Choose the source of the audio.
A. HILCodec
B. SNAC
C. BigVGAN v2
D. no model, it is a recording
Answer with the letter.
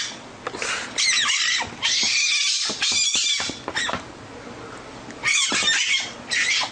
D